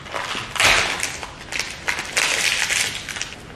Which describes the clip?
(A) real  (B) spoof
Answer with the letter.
A